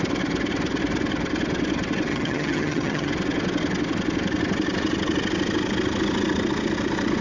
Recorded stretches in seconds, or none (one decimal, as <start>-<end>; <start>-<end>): 0.0-2.1; 3.1-7.2